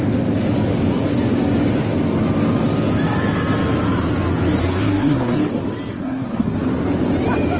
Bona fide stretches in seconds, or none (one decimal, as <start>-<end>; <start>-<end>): 0.0-4.6; 5.4-5.9; 6.6-7.6